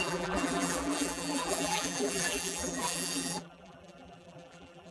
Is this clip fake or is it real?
fake